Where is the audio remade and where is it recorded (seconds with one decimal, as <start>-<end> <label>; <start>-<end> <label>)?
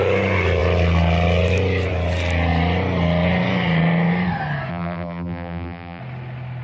0.0-4.7 recorded; 4.7-6.0 remade; 6.0-6.6 recorded